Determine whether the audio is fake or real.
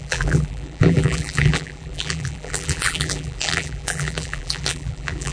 fake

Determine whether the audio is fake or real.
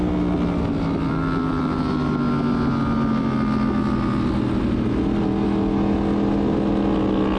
real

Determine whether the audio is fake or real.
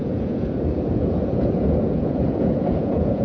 fake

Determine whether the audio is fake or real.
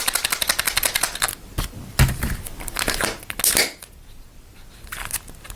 real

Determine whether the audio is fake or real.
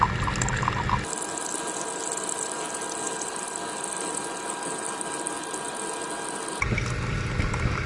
real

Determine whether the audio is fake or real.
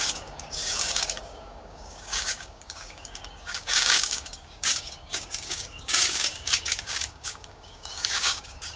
fake